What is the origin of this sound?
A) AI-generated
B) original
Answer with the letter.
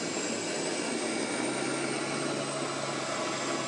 B